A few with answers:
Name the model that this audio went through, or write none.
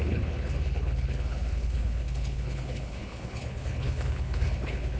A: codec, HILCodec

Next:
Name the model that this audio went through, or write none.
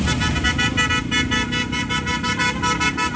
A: none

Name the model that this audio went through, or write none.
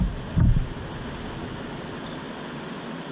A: none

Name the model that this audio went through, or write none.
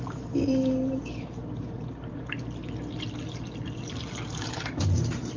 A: none